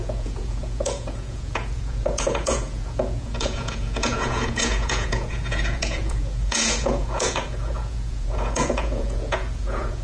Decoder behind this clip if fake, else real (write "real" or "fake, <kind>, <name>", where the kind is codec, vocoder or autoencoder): fake, vocoder, Vocos